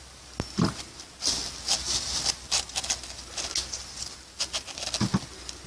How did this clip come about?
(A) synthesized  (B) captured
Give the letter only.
B